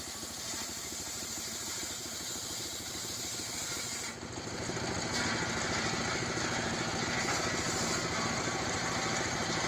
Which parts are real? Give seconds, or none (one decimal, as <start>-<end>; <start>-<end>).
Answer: 3.9-8.2